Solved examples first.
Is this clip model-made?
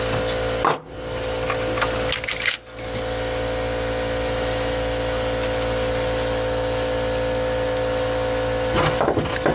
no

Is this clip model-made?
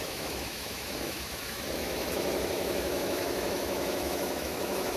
yes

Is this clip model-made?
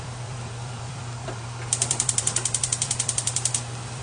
yes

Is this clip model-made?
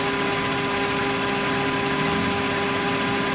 no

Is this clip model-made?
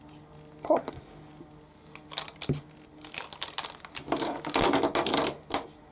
no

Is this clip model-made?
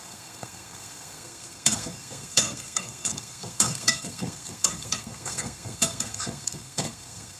yes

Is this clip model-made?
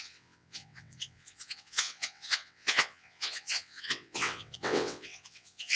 yes